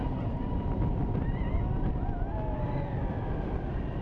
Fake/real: real